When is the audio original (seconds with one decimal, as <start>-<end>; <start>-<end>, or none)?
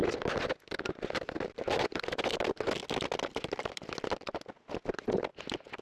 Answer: 0.0-5.8